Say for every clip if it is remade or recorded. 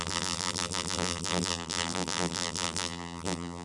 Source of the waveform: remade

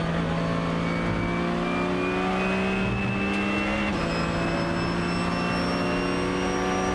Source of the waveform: recorded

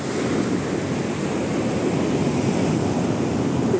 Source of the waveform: recorded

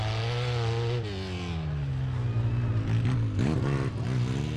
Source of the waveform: recorded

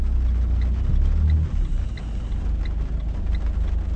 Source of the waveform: recorded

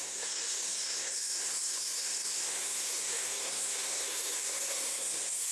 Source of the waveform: remade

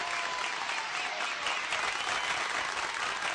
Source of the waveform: recorded